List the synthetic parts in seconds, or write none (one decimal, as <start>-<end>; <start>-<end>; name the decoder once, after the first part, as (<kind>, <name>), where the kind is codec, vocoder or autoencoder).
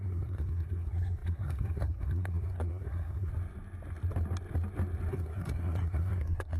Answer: 0.0-3.3 (codec, SNAC); 5.1-6.6